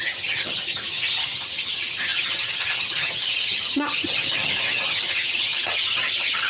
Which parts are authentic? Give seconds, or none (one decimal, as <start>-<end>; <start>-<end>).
none